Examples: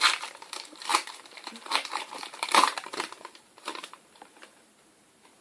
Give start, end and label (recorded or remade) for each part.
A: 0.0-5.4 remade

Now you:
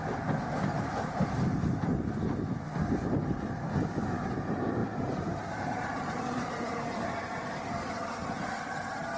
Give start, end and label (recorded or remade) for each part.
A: 0.0-4.8 recorded; 4.8-7.9 remade; 7.9-9.2 recorded

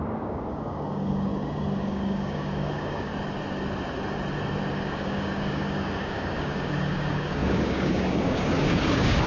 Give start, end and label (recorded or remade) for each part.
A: 0.0-1.3 remade; 1.3-1.8 recorded; 1.8-3.1 remade; 3.1-4.7 recorded; 4.7-9.3 remade

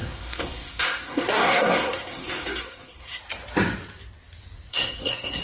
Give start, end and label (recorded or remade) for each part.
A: 0.0-3.2 remade; 3.2-4.7 recorded; 4.7-5.4 remade

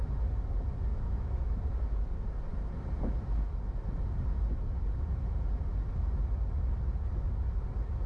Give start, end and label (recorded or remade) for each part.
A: 0.0-0.9 recorded; 0.9-1.6 remade; 1.6-8.1 recorded

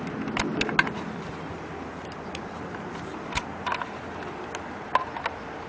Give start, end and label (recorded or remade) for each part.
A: 0.0-3.1 recorded; 3.1-3.6 remade; 3.6-5.7 recorded

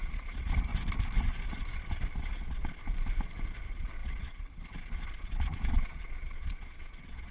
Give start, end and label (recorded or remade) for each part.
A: 0.0-0.7 remade; 0.7-2.2 recorded; 2.2-2.8 remade; 2.8-3.6 recorded; 3.6-7.3 remade